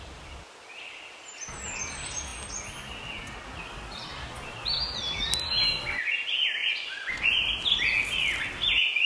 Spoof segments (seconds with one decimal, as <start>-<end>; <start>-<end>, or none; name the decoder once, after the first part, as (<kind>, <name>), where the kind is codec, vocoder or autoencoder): 6.6-7.4 (vocoder, Vocos)

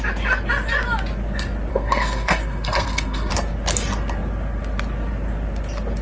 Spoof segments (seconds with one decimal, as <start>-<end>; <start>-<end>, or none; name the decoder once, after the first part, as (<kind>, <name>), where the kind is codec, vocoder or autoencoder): 1.7-3.3 (codec, SNAC)